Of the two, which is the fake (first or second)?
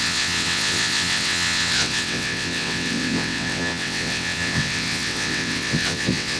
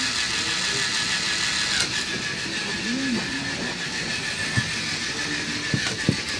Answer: first